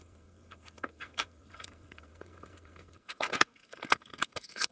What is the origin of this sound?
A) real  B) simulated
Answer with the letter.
B